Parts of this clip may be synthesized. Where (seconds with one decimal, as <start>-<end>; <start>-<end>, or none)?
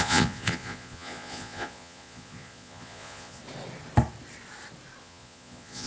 0.0-3.4; 5.0-5.9